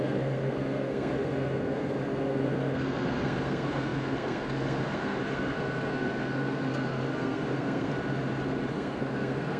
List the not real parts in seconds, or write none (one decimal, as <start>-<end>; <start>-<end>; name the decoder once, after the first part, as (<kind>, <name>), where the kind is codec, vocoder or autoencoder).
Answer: 0.0-7.9 (codec, SNAC); 8.7-9.6